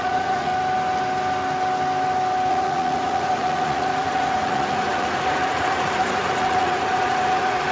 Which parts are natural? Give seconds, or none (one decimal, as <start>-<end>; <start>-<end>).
0.5-2.5